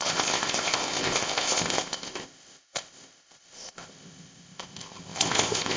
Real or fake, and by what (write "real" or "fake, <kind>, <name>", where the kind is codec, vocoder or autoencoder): fake, codec, ZipCodec